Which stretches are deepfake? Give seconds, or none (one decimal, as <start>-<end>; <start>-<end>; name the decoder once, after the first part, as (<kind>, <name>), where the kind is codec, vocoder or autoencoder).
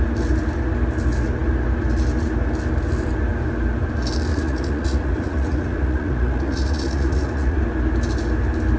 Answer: 4.3-7.6 (vocoder, Vocos)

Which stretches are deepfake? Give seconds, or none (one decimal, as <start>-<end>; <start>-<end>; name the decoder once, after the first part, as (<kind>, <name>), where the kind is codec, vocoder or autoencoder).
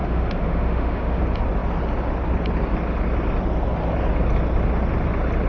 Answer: 0.0-1.2 (autoencoder, DAC-VAE)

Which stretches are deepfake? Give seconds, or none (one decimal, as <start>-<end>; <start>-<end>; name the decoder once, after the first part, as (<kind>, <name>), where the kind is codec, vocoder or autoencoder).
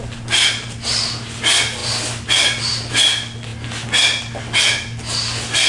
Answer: none